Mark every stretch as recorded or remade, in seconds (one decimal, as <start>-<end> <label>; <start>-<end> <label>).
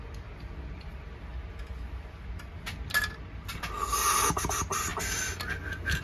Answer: 0.0-1.3 remade; 1.3-4.4 recorded; 4.4-4.9 remade; 4.9-5.5 recorded; 5.5-6.0 remade